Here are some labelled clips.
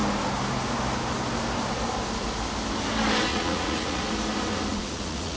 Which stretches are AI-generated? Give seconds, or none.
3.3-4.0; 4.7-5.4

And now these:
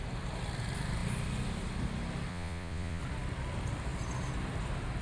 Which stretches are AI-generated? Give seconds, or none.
2.3-3.0

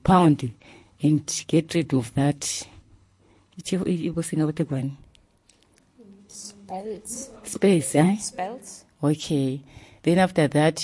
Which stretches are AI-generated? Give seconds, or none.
0.0-4.8; 6.2-8.2

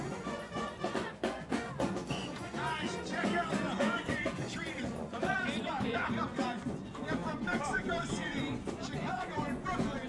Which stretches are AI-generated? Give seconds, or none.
0.0-10.1

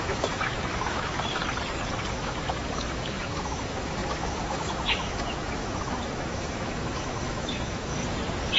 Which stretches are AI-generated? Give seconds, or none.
0.0-1.4; 2.1-7.9

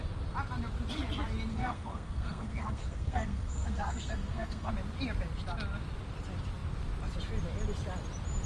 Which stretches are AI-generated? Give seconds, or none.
1.5-4.7